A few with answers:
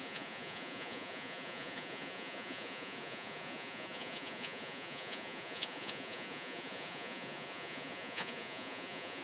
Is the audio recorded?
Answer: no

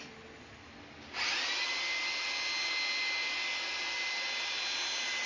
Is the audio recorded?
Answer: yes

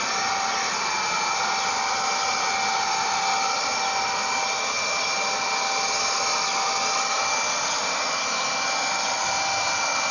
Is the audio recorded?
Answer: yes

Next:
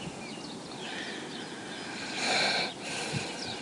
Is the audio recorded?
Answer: yes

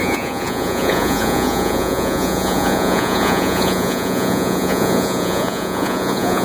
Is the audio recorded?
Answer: no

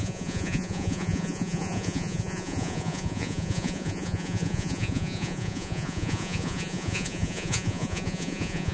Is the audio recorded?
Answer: no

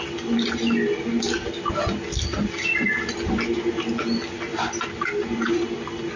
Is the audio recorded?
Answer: yes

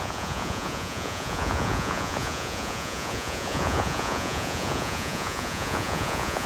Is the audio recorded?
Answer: no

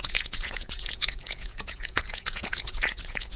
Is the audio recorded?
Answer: no